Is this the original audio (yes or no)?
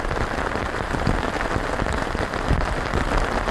yes